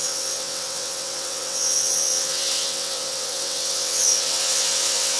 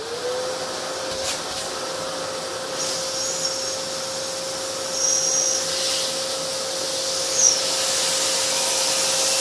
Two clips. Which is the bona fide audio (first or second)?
second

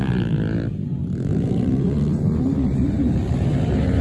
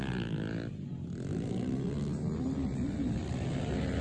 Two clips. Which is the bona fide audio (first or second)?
second